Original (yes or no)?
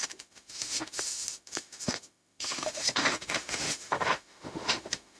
no